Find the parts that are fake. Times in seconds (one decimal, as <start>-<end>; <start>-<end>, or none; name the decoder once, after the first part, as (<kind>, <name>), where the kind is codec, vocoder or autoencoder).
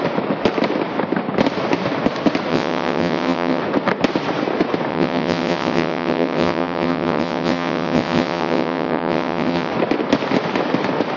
2.5-3.6 (vocoder, WaveNeXt); 4.9-9.7